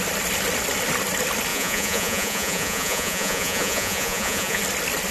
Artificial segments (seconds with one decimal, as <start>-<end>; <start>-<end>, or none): 1.5-4.6